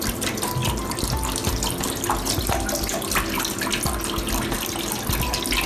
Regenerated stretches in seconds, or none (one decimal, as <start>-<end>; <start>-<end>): none